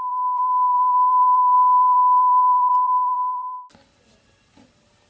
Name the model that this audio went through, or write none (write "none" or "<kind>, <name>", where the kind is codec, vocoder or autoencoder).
vocoder, BigVGAN v2